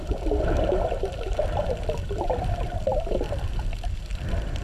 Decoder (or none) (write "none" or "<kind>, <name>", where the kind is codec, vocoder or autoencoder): vocoder, BigVGAN v2